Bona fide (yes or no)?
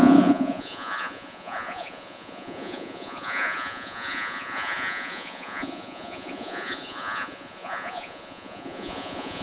no